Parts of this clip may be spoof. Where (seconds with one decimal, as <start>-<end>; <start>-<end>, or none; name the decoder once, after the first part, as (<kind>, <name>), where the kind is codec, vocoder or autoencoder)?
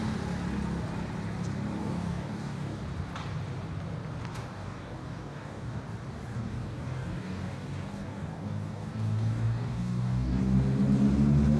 1.8-2.8 (codec, DAC); 4.3-5.8; 6.3-10.4